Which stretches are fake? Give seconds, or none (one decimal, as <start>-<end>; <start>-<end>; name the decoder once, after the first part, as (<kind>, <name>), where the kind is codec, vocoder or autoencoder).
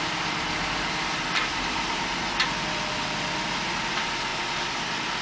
1.5-2.2 (vocoder, BigVGAN v2)